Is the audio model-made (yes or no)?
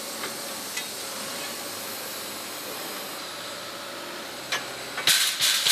no